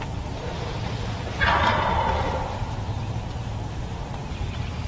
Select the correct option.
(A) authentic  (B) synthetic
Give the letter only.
A